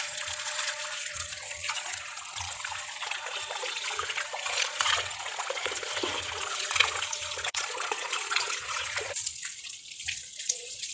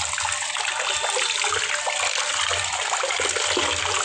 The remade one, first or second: first